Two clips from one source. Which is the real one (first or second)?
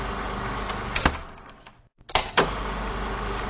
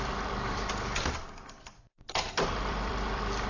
first